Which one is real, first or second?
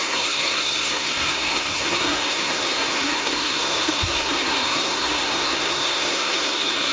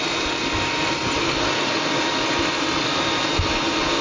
second